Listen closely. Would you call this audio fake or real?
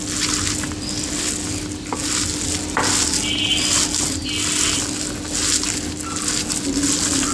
real